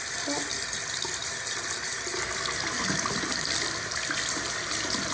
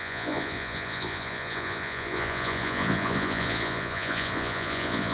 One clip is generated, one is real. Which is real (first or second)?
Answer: first